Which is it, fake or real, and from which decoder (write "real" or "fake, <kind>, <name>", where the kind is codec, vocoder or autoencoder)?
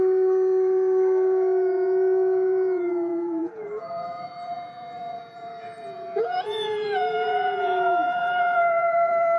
fake, vocoder, Vocos